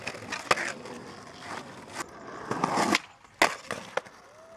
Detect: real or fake real